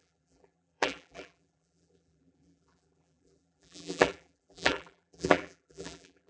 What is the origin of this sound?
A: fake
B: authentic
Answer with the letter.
A